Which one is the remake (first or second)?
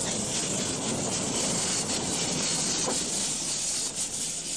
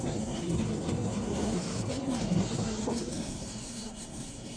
second